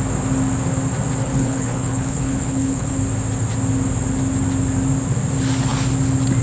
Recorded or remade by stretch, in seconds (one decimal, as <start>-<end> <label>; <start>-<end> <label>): 0.0-1.2 recorded; 1.2-3.0 remade; 3.0-6.4 recorded